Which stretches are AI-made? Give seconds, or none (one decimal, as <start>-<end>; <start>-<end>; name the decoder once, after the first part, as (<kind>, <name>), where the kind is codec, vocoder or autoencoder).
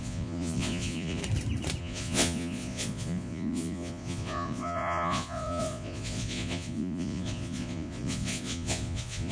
0.0-1.2 (vocoder, Vocos); 1.8-9.3